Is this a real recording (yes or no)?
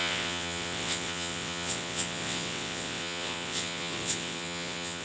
no